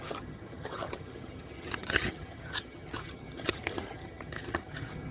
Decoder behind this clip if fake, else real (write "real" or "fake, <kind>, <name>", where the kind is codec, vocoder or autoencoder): fake, vocoder, HiFi-GAN